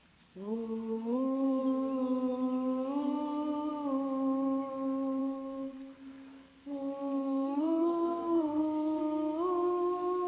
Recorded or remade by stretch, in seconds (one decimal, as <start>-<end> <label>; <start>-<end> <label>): 0.0-1.6 remade; 1.6-5.2 recorded; 5.2-9.0 remade; 9.0-10.3 recorded